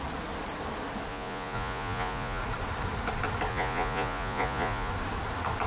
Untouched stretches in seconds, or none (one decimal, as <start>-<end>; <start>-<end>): 0.0-1.1; 2.4-3.5; 4.9-5.7